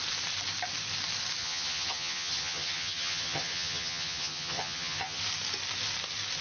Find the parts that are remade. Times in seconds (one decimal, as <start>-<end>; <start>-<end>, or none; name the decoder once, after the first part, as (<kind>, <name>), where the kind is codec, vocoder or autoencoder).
1.4-5.2 (vocoder, HiFi-GAN)